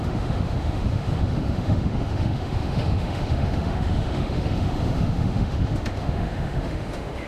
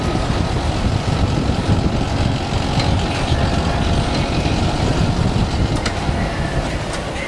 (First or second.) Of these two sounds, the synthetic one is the first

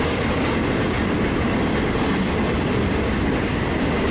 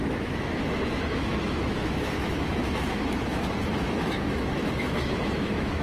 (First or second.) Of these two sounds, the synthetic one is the second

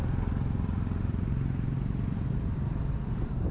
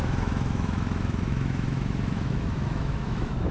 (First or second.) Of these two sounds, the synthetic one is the second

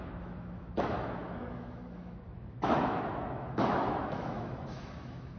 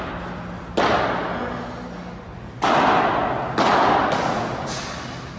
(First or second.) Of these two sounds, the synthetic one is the first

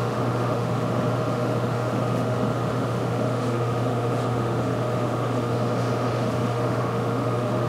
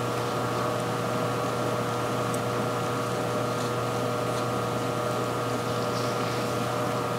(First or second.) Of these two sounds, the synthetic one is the first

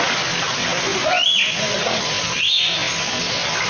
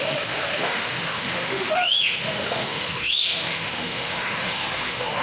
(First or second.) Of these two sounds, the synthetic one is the second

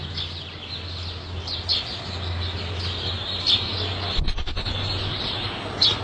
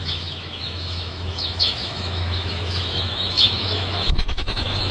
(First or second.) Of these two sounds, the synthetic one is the second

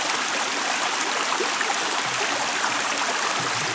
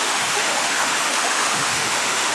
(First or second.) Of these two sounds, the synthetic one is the second